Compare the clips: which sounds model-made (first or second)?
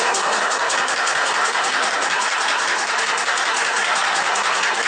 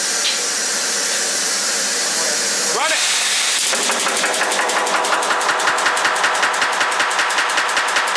first